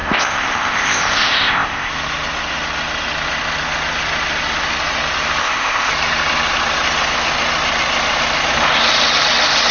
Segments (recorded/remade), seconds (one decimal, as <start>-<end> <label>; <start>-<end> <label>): 0.0-1.9 remade; 1.9-5.4 recorded; 5.4-5.9 remade; 5.9-9.7 recorded